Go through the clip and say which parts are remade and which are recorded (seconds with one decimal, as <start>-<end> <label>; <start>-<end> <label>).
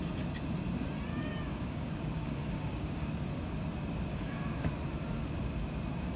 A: 0.0-1.1 recorded; 1.1-3.1 remade; 3.1-4.1 recorded; 4.1-4.7 remade; 4.7-6.2 recorded